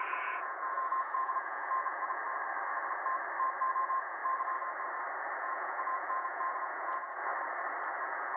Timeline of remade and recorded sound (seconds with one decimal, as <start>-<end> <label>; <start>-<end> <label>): 0.0-2.2 remade; 2.2-3.8 recorded; 3.8-4.2 remade; 4.2-5.4 recorded; 5.4-7.3 remade; 7.3-8.0 recorded; 8.0-8.4 remade

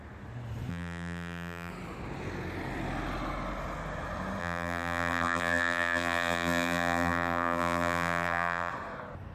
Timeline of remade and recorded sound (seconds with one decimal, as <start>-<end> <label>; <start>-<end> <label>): 0.0-0.7 recorded; 0.7-1.7 remade; 1.7-4.4 recorded; 4.4-8.7 remade; 8.7-9.3 recorded

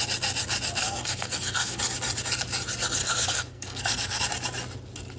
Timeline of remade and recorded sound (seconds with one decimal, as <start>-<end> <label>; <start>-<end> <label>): 0.0-0.8 recorded; 0.8-1.8 remade; 1.8-3.0 recorded; 3.0-4.2 remade; 4.2-5.2 recorded